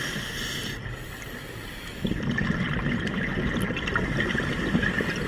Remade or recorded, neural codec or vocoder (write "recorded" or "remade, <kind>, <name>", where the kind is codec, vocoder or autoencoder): recorded